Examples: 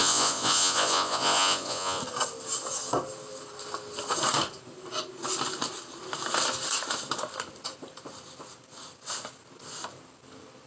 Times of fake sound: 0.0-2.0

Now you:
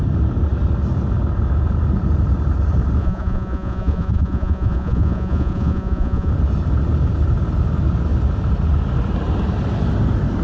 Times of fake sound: 3.0-6.3

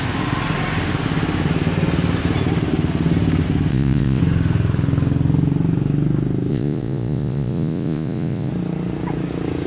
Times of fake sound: 3.7-4.2; 6.5-8.5

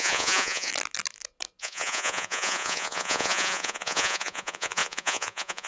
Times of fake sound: 0.0-0.7; 1.6-5.7